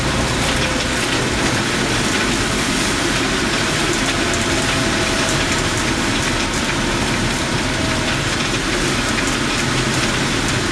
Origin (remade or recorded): recorded